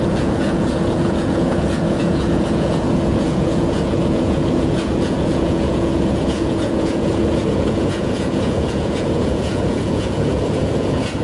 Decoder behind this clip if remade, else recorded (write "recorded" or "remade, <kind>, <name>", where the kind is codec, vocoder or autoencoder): remade, vocoder, Vocos